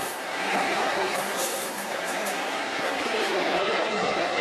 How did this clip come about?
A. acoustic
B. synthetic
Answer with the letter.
B